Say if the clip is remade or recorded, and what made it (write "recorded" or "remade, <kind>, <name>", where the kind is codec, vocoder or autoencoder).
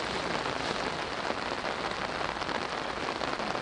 recorded